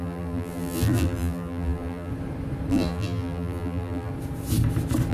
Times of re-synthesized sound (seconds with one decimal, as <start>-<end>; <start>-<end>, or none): 0.0-2.1; 2.7-4.1